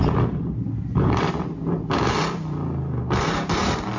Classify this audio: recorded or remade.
remade